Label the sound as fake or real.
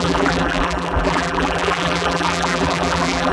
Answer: fake